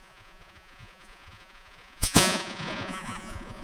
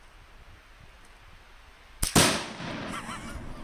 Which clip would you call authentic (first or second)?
second